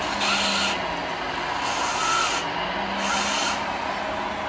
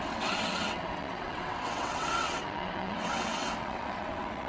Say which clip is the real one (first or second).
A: first